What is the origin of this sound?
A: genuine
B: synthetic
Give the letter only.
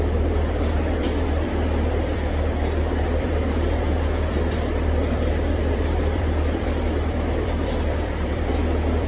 B